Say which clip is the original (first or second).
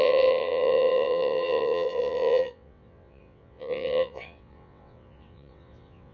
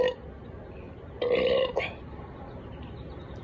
second